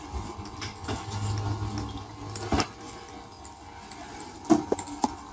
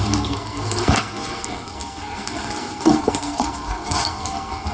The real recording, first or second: first